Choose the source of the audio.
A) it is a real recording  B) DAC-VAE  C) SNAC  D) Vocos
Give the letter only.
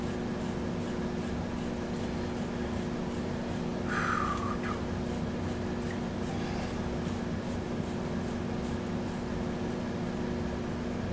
A